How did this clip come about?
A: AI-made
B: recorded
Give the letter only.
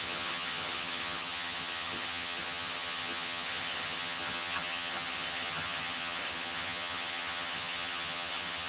A